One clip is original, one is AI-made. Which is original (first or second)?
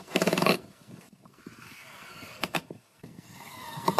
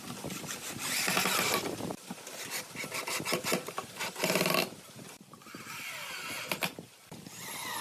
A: second